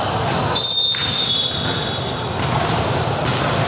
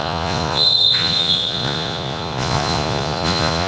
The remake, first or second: second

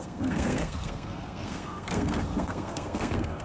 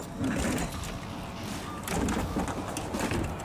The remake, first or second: first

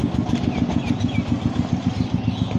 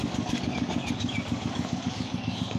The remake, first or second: second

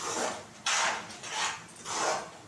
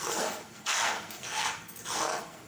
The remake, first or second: second